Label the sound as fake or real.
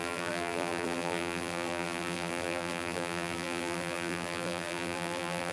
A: fake